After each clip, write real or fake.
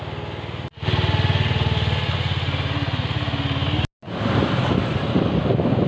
real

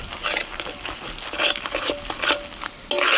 real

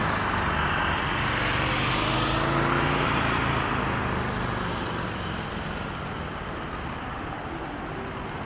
real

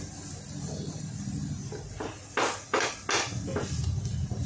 real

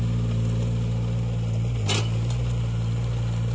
real